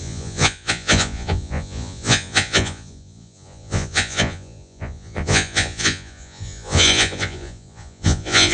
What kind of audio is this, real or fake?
fake